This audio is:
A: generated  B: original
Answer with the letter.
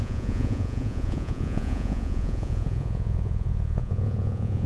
A